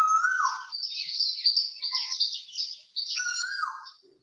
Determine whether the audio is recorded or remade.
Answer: recorded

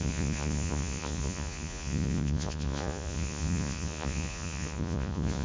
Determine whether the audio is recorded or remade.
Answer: remade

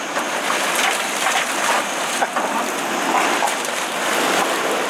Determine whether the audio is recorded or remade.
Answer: recorded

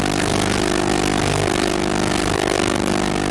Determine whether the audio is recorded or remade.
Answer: recorded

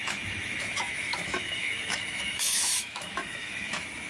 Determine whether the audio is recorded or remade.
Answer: remade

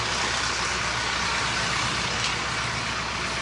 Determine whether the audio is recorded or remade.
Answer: recorded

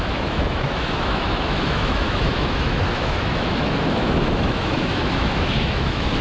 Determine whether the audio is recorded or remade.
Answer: remade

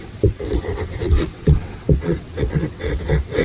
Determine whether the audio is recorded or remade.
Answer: remade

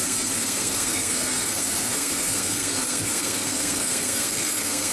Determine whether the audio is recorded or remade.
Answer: remade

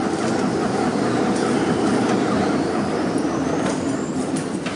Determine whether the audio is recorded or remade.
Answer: remade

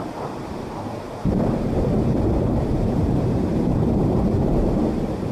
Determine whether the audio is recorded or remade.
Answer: remade